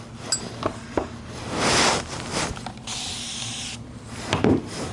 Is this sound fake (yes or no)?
no